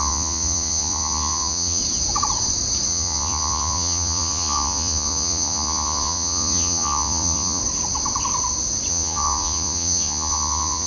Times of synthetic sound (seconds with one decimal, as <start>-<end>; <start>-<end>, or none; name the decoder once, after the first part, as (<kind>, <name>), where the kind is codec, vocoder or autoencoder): 0.0-1.8 (vocoder, Vocos); 2.9-7.6; 8.9-10.9